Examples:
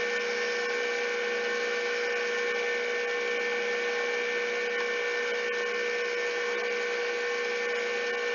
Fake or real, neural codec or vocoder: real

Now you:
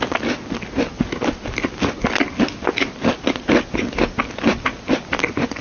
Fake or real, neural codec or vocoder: real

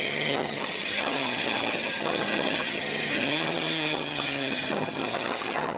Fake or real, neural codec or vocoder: fake, vocoder, HiFi-GAN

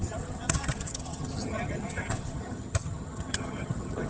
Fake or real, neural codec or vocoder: fake, vocoder, HiFi-GAN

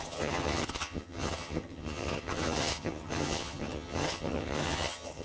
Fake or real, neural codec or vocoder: fake, vocoder, HiFi-GAN